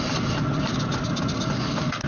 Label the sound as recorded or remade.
recorded